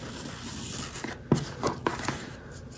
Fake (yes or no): no